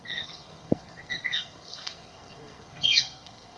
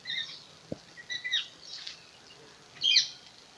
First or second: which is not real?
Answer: first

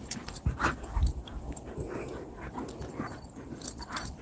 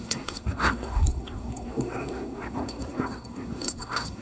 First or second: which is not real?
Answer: second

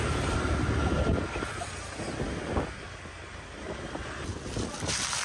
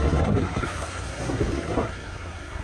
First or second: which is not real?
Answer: second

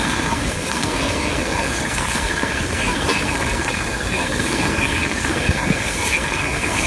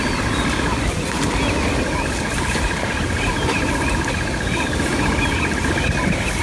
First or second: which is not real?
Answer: first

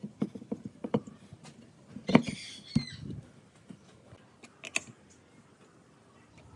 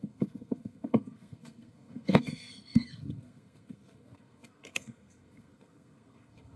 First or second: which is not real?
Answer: second